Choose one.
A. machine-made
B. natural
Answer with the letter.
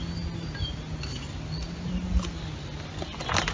B